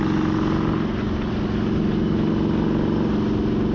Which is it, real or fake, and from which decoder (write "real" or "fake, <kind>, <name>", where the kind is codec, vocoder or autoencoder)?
real